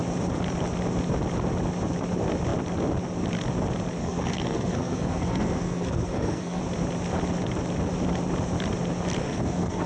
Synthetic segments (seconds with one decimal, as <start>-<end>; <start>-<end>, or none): 4.0-6.6; 9.2-9.9